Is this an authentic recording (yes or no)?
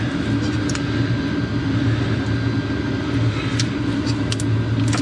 yes